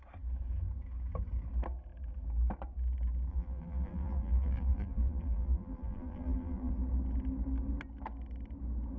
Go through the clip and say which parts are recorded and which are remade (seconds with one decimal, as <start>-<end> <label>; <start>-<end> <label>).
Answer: 0.0-3.3 recorded; 3.3-6.7 remade; 6.7-9.0 recorded